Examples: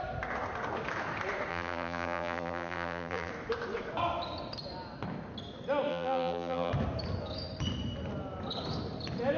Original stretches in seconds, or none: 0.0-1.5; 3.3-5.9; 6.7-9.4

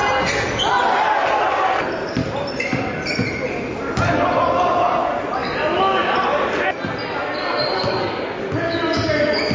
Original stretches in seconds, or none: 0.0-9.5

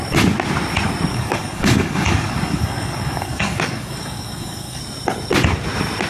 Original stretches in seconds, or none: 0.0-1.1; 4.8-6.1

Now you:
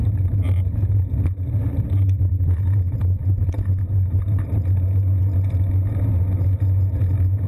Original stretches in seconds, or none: 4.5-7.5

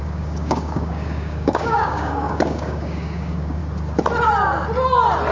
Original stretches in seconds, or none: 3.6-5.3

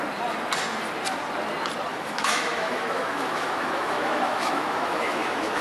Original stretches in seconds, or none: 0.0-1.9

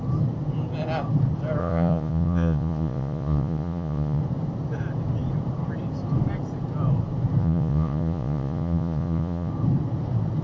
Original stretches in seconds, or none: 0.0-1.6; 4.2-7.4; 9.5-10.4